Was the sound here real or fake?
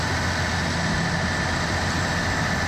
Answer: real